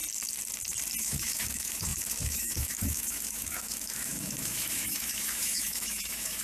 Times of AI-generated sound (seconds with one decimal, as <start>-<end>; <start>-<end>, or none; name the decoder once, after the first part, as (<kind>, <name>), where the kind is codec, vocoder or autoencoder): 1.0-6.4 (autoencoder, DAC-VAE)